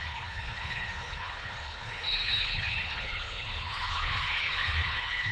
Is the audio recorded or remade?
remade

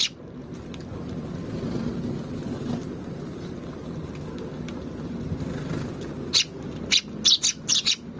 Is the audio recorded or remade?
recorded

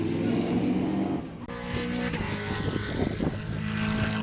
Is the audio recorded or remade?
recorded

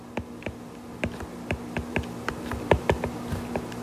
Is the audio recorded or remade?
recorded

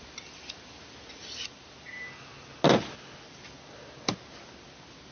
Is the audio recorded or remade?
recorded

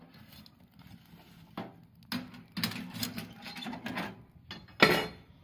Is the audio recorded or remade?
recorded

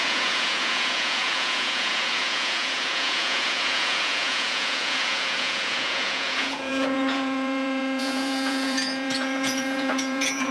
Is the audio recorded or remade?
remade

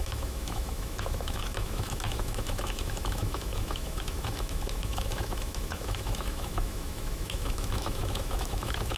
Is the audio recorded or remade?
remade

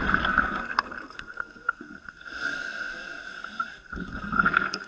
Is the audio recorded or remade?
remade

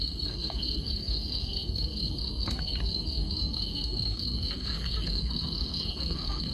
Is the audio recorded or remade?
remade